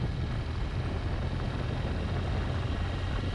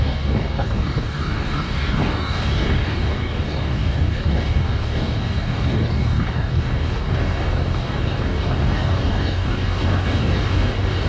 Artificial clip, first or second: second